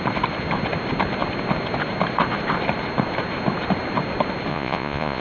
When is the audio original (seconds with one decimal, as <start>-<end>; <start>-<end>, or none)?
0.0-4.5